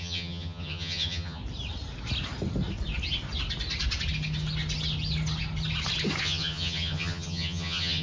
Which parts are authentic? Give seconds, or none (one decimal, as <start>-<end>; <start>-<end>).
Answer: 1.4-6.2